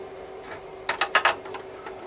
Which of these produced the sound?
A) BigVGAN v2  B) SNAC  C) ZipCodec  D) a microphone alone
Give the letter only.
D